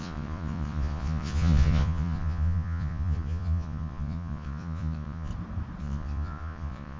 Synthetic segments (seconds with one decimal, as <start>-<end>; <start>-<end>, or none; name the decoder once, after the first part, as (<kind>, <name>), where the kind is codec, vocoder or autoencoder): 0.0-5.3 (vocoder, Vocos); 5.8-7.0